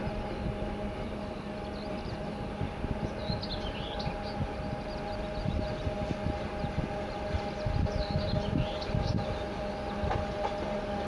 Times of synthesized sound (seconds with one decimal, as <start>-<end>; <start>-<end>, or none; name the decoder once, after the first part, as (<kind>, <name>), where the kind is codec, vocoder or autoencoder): 3.2-4.2 (vocoder, BigVGAN v2)